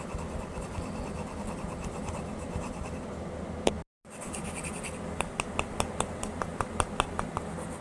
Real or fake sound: real